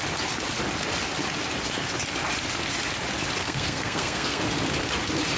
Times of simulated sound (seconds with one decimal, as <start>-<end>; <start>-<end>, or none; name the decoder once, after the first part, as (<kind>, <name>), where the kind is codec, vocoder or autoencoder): 3.4-4.4 (codec, SNAC)